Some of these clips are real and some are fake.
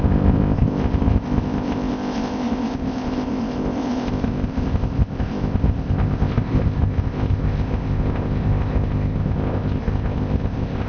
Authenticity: fake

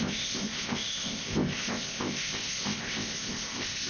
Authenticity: fake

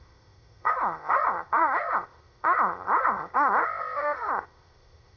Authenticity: fake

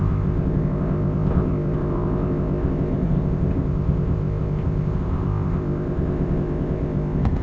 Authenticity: fake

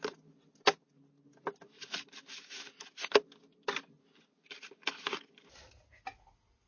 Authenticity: real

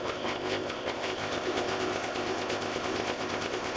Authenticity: fake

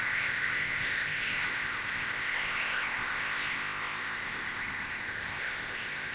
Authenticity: fake